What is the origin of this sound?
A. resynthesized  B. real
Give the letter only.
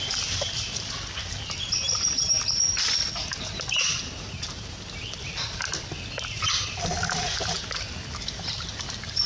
B